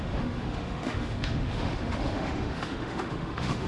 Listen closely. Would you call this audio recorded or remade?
remade